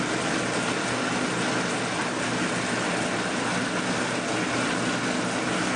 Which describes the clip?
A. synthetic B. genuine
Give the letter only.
B